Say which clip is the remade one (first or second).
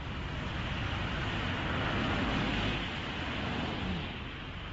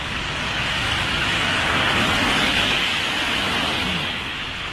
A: second